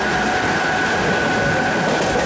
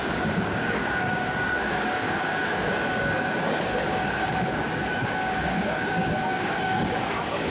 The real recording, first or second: first